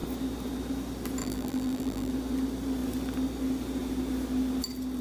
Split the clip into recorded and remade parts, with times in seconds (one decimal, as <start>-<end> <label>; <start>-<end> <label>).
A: 0.0-1.2 recorded; 1.2-2.1 remade; 2.1-5.0 recorded